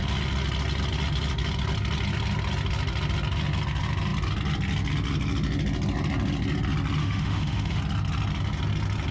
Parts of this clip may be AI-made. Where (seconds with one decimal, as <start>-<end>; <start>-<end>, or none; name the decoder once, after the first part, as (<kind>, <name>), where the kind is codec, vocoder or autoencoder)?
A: 7.0-7.8 (autoencoder, DAC-VAE)